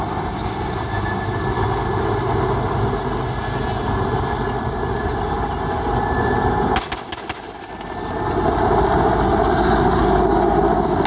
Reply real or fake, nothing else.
real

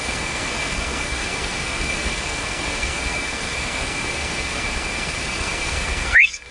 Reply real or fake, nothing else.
fake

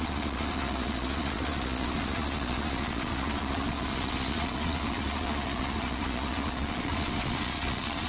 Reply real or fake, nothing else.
fake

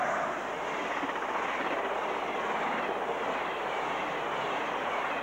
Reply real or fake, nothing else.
real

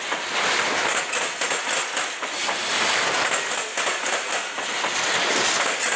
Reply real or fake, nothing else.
real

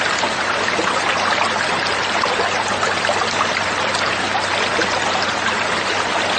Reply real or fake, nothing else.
real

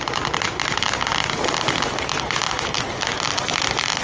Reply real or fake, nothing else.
real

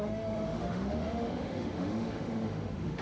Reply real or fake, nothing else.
fake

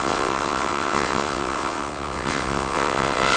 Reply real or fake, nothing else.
fake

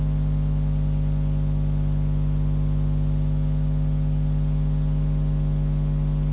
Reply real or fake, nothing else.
real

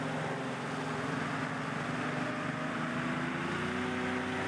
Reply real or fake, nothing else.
real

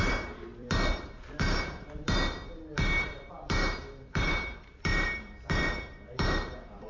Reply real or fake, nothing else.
fake